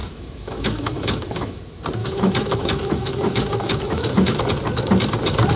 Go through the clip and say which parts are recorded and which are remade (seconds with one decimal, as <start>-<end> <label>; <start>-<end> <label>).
0.0-1.6 remade; 1.6-2.0 recorded; 2.0-4.5 remade; 4.5-5.6 recorded

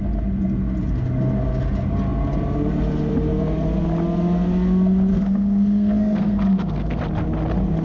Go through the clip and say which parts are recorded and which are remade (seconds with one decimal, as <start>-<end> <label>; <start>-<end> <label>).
0.0-5.1 recorded; 5.1-7.0 remade; 7.0-7.8 recorded

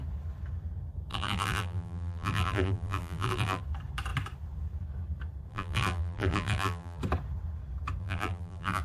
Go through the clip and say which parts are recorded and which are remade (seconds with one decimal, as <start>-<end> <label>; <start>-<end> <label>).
0.0-1.1 recorded; 1.1-3.6 remade; 3.6-5.5 recorded; 5.5-7.0 remade; 7.0-8.0 recorded; 8.0-8.8 remade